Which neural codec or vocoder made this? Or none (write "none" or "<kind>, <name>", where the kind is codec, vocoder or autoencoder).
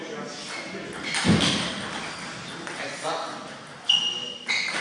none